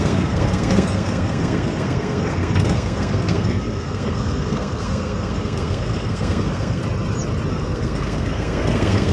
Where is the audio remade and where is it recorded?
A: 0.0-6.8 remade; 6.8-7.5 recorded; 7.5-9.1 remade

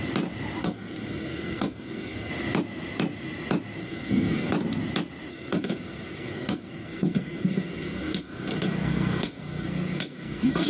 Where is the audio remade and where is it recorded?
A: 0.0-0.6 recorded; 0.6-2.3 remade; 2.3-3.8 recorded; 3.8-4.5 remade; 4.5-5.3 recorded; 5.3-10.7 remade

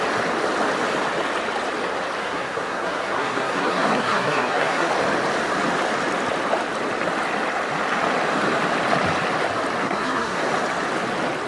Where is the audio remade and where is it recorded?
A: 0.0-2.2 recorded; 2.2-4.9 remade; 4.9-9.8 recorded; 9.8-10.4 remade; 10.4-11.5 recorded

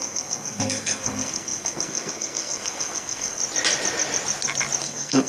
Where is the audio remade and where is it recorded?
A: 0.0-3.4 remade; 3.4-4.8 recorded; 4.8-5.3 remade

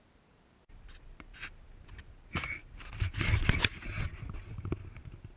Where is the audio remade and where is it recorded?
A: 0.0-5.4 recorded

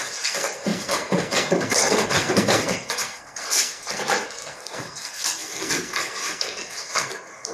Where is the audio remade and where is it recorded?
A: 0.0-7.5 remade